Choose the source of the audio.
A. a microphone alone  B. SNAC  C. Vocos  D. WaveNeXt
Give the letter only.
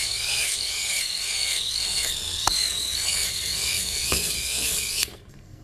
B